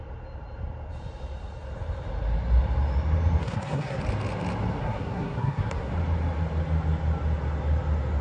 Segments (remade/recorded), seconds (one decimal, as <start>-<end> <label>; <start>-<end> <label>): 0.0-3.4 recorded; 3.4-4.0 remade; 4.0-4.8 recorded; 4.8-5.9 remade; 5.9-8.2 recorded